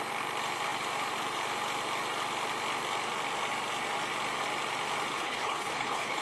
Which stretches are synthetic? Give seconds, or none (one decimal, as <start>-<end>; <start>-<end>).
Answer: 5.1-6.2